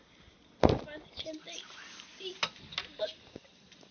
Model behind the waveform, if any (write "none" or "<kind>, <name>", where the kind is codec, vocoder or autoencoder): none